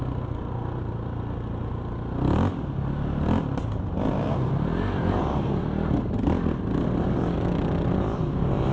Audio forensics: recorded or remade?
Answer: recorded